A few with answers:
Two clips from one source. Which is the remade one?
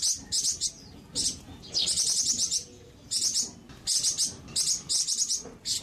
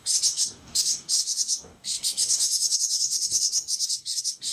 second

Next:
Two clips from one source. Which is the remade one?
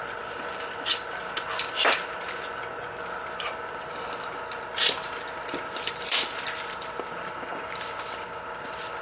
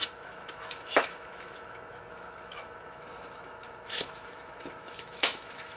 second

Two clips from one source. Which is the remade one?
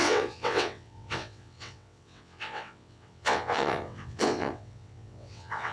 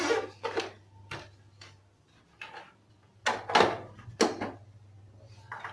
first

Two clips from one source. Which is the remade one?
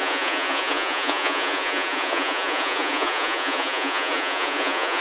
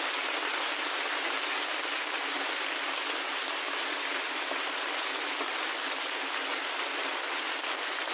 first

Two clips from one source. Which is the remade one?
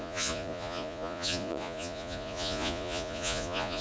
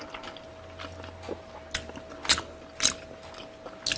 first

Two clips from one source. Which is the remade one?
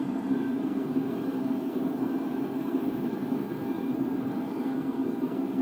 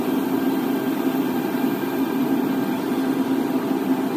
first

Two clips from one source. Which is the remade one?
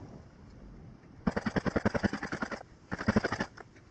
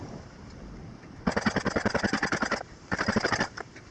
second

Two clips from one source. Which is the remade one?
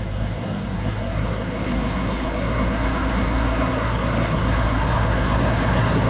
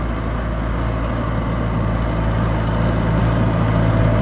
first